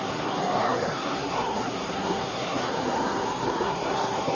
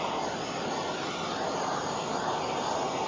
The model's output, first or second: first